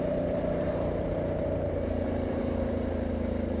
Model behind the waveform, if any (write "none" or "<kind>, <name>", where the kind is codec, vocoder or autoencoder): vocoder, BigVGAN v2